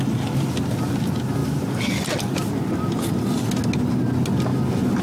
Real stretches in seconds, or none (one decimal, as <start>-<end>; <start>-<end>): 0.0-5.0